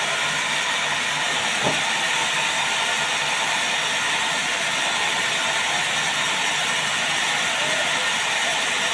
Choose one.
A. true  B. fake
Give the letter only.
A